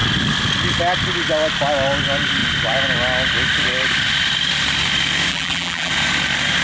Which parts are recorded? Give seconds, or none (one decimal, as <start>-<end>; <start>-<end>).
0.0-5.3; 5.9-6.6